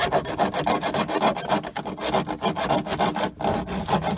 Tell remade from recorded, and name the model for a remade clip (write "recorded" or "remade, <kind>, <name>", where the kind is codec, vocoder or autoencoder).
recorded